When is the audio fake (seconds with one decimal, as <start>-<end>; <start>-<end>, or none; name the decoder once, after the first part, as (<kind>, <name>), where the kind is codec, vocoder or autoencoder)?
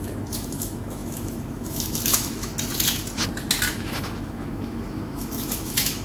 0.0-2.5 (autoencoder, DAC-VAE); 3.7-6.0